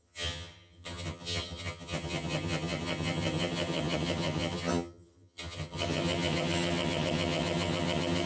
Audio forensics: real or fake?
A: fake